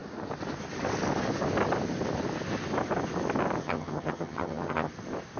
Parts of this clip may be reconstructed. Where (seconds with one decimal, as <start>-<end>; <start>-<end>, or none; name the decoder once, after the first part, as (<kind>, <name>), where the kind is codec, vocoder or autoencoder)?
3.6-4.9 (vocoder, HiFi-GAN)